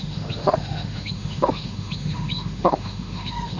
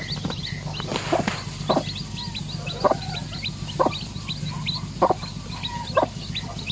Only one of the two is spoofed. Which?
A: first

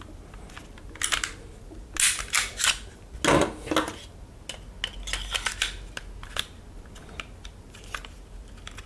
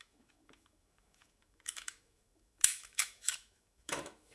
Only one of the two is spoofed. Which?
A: second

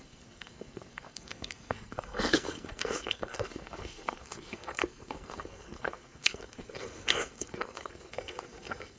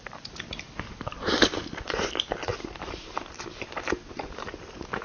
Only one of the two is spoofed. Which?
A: first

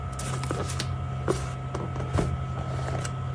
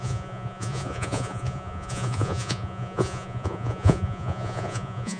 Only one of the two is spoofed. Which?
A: second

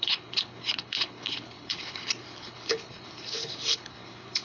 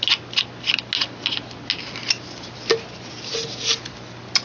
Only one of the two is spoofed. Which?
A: first